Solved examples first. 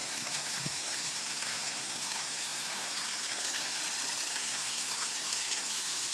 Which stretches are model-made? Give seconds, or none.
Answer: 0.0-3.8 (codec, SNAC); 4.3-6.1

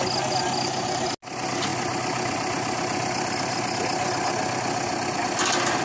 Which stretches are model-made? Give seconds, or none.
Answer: none

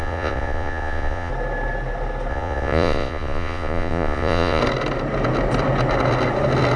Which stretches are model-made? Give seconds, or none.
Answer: 0.0-1.3 (vocoder, Vocos); 2.3-4.6

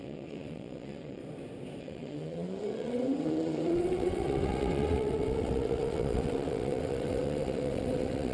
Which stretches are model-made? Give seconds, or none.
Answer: 0.0-1.2 (vocoder, WaveNeXt); 1.8-8.3

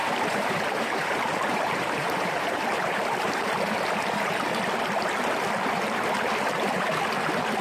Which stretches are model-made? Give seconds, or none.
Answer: 0.0-4.5 (vocoder, BigVGAN v2)

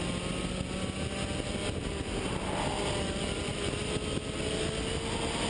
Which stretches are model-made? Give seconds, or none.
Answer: none

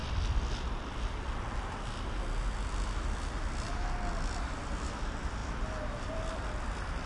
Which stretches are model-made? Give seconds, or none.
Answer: none